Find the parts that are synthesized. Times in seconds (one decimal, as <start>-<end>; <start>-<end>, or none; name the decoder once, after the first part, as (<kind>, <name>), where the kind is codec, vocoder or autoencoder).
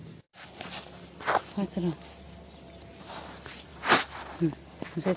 none